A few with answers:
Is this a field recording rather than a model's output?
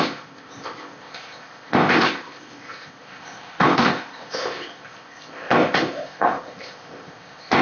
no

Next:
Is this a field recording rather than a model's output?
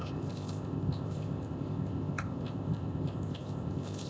no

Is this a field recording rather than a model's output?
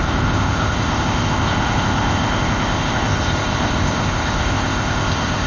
no